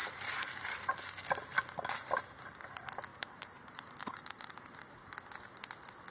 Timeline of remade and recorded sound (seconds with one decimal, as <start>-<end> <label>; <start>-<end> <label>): 0.0-0.9 remade; 0.9-3.1 recorded; 3.1-4.8 remade; 4.8-6.1 recorded